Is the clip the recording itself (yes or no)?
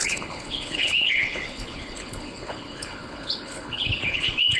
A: no